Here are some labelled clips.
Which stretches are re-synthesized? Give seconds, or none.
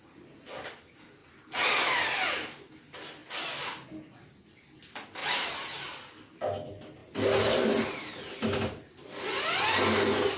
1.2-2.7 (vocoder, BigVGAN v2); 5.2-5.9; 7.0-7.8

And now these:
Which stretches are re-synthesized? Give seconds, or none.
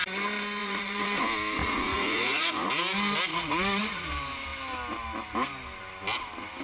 0.6-1.2 (vocoder, Vocos); 1.6-2.7; 3.3-4.1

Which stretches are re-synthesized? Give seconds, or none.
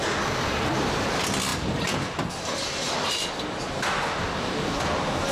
none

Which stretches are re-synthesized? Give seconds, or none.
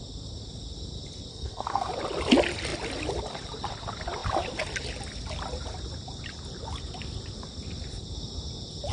1.3-1.9 (codec, SNAC)